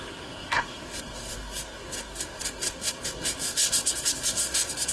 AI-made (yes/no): yes